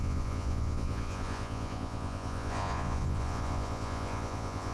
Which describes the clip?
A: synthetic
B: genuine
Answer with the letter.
A